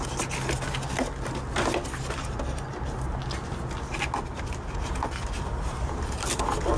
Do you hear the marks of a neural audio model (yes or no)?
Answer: no